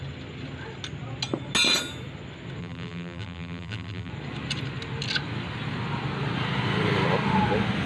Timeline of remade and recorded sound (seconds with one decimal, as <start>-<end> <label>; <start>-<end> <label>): 0.0-2.6 recorded; 2.6-4.1 remade; 4.1-7.9 recorded